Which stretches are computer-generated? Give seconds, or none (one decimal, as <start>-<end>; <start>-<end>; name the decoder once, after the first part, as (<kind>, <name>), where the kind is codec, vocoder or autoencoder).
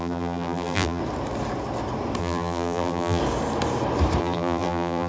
0.0-1.0 (vocoder, BigVGAN v2); 2.2-3.2; 4.2-5.1